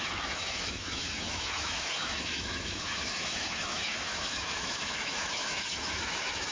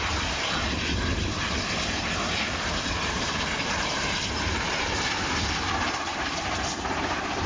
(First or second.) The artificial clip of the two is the first